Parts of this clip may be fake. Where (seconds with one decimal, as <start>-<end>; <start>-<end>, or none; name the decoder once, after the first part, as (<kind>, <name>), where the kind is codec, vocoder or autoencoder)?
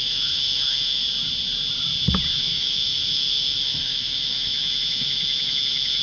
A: 0.0-1.0 (autoencoder, DAC-VAE); 2.3-6.0